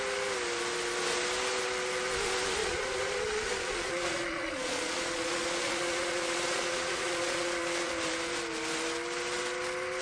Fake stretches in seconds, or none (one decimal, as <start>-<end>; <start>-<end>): 2.6-7.9